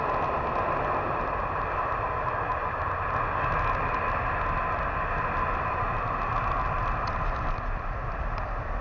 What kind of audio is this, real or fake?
real